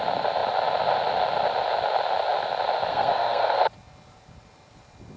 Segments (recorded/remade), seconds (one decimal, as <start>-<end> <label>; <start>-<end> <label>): 0.0-2.9 recorded; 2.9-3.6 remade; 3.6-5.2 recorded